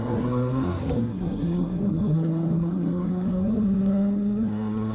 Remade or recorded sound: remade